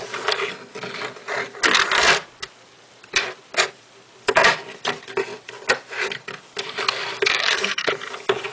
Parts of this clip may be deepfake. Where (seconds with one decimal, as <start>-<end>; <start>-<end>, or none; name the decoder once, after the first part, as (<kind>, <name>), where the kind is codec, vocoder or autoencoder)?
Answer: 7.4-7.9 (codec, SNAC)